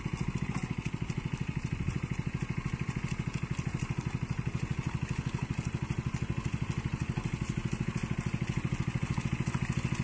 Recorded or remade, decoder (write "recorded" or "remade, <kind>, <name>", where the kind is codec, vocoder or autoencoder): recorded